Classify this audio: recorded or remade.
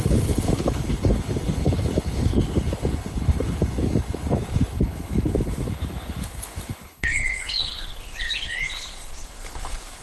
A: remade